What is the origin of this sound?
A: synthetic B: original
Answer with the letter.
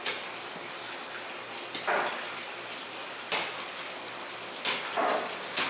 B